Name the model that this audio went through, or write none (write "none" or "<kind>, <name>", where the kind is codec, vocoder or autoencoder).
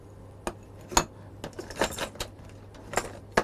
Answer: none